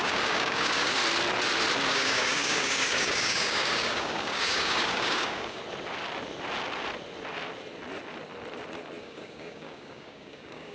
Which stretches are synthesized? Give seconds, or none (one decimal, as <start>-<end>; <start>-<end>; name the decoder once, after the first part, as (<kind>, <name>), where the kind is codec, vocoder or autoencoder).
0.0-1.0 (codec, DAC); 1.9-5.6; 9.0-10.7